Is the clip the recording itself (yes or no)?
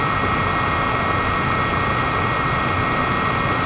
yes